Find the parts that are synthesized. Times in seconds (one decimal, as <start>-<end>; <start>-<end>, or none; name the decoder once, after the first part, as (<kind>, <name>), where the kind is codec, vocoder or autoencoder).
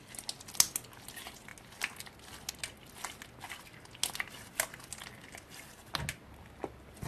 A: none